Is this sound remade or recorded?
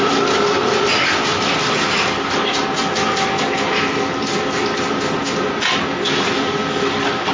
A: recorded